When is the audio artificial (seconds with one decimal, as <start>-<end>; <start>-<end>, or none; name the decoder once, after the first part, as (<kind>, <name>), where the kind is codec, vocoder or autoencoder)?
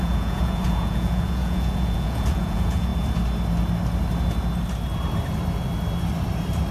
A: 0.0-2.9 (vocoder, Vocos)